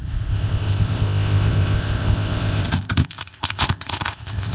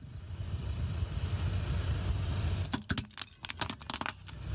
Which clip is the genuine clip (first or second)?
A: second